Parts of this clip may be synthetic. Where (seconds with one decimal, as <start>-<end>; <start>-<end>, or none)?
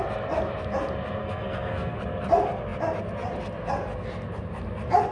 1.2-2.0